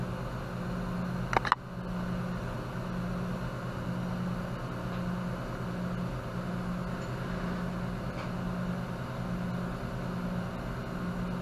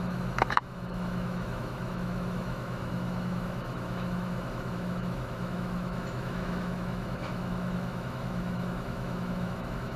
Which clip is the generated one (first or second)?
second